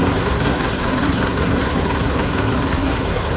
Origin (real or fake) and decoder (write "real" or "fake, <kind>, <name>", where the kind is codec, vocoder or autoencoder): fake, codec, SNAC